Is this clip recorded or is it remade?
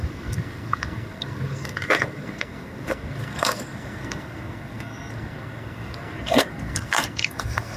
remade